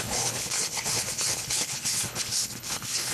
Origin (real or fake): fake